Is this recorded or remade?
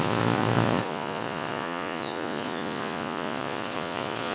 remade